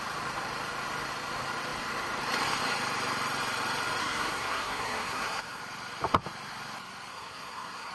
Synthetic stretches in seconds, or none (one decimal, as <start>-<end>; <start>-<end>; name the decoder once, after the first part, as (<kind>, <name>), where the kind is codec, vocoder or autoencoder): 4.0-5.6 (codec, SNAC); 7.1-7.9